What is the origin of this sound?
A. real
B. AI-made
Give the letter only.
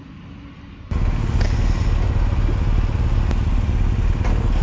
A